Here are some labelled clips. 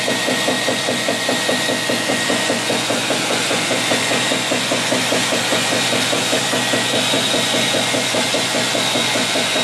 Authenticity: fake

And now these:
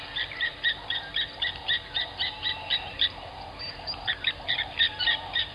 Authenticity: fake